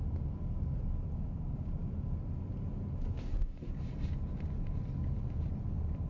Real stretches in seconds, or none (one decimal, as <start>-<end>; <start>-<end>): 0.0-6.1